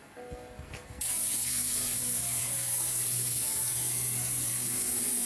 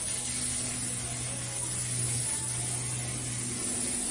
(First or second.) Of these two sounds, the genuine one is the second